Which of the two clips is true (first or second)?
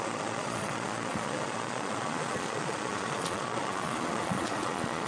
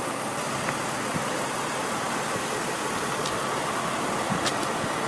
second